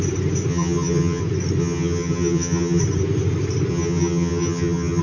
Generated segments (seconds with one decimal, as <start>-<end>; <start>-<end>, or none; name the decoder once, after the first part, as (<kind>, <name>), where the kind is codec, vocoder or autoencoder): 0.5-1.2 (vocoder, HiFi-GAN); 1.6-2.8; 3.7-5.0